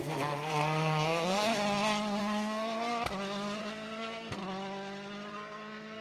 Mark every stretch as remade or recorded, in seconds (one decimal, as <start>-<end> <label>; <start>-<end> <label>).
0.0-1.5 remade; 1.5-2.2 recorded; 2.2-2.9 remade; 2.9-3.6 recorded; 3.6-4.4 remade; 4.4-5.3 recorded; 5.3-6.0 remade